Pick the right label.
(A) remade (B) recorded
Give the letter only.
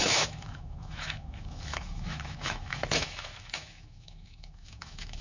A